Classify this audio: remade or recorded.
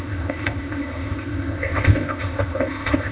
remade